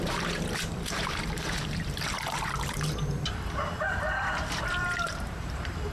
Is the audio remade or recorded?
remade